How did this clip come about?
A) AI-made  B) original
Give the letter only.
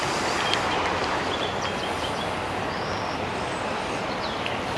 B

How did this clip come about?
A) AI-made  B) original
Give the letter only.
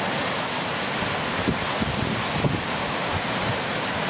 B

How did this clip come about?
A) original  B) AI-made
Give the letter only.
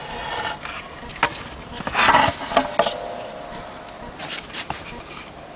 A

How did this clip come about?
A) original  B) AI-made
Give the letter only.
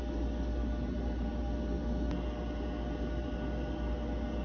A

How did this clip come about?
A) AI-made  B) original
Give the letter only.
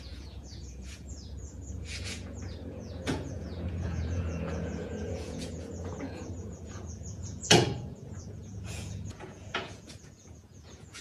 A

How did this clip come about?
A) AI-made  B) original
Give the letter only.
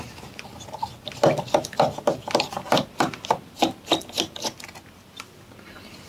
B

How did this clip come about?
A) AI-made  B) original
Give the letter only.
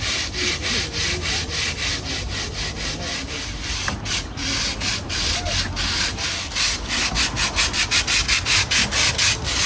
B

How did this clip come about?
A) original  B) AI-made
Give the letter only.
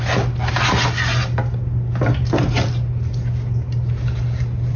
A